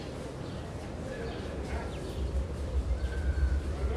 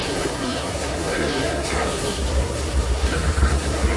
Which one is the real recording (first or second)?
first